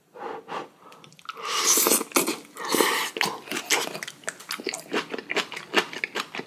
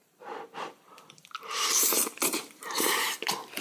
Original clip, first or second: first